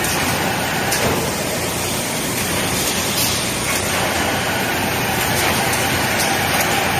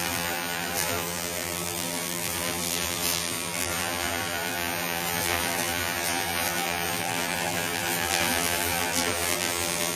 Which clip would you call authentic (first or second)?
first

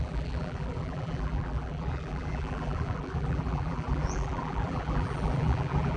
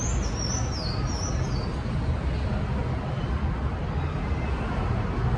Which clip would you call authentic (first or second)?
second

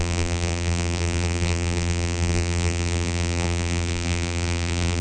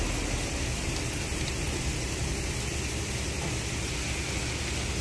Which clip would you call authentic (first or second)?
second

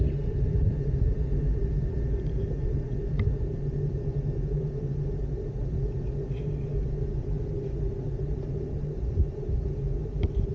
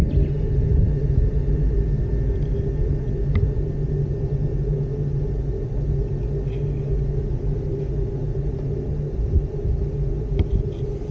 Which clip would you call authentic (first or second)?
second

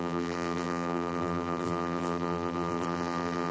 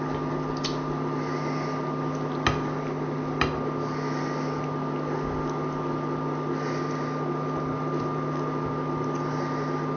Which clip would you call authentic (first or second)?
second